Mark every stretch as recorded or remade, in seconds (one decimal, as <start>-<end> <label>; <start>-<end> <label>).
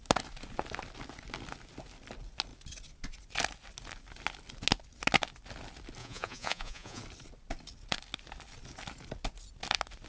0.0-6.0 recorded; 6.0-7.0 remade; 7.0-10.1 recorded